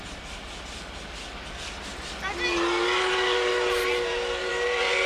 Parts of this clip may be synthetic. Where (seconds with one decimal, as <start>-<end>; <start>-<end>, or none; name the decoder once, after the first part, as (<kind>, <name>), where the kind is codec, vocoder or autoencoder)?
none